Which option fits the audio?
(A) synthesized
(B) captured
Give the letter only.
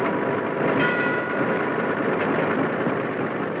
B